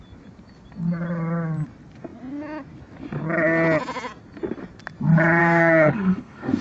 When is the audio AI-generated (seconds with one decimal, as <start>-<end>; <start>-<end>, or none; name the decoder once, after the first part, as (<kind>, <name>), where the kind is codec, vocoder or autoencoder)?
5.4-6.6 (codec, SNAC)